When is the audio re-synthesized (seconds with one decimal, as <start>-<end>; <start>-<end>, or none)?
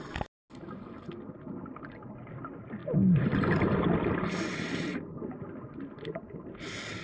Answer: none